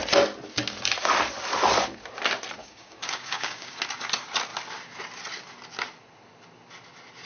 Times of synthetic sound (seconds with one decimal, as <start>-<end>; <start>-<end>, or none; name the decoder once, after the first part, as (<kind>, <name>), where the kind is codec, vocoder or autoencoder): 2.6-3.8 (codec, DAC)